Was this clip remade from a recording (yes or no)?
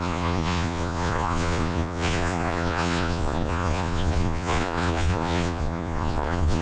yes